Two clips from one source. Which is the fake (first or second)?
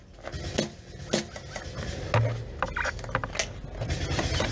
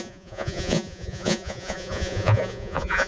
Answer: second